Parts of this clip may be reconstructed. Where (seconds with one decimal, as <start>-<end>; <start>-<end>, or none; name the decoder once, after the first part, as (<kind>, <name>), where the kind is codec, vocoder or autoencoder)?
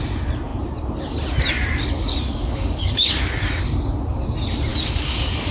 2.1-3.6 (codec, DAC); 4.7-5.5